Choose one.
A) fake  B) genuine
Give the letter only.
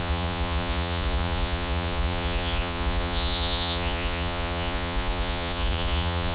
A